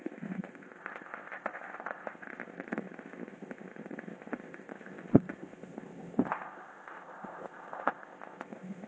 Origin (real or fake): fake